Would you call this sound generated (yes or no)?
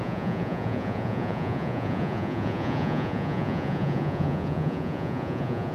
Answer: yes